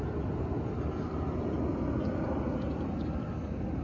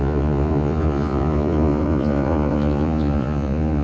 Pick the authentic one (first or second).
first